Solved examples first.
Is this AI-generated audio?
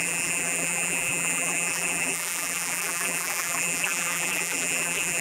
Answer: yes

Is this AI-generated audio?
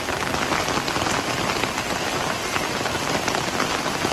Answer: no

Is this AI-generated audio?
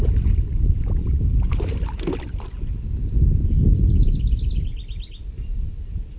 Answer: yes